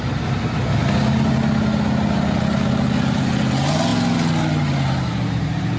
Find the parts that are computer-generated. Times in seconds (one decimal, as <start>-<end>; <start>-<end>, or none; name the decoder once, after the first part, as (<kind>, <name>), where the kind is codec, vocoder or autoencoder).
none